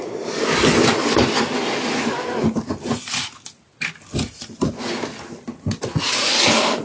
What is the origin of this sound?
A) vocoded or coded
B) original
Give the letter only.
B